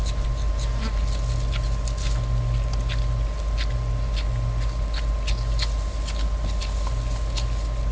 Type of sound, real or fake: real